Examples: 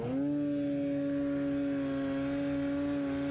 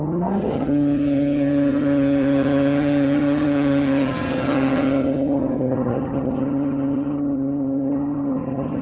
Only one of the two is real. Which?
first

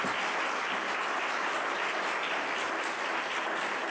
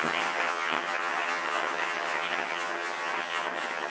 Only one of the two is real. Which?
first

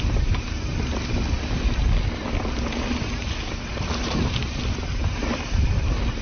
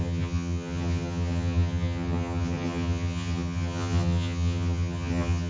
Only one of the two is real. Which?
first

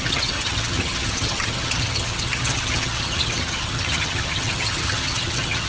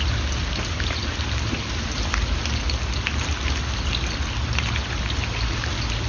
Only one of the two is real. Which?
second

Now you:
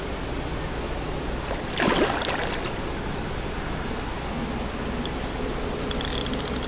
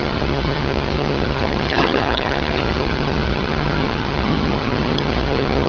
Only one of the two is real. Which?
first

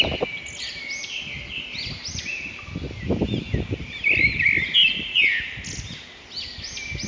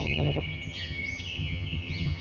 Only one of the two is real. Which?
first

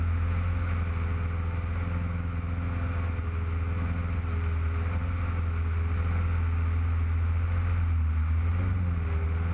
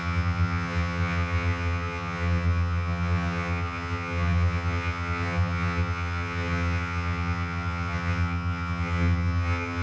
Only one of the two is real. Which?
first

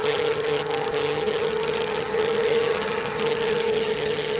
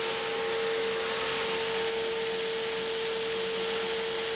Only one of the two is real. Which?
second